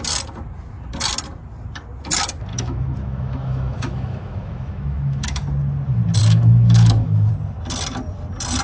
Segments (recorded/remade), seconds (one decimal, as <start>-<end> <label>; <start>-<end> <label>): 0.0-2.5 recorded; 2.5-5.4 remade; 5.4-6.2 recorded; 6.2-7.3 remade; 7.3-8.6 recorded